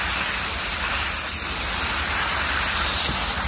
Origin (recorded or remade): recorded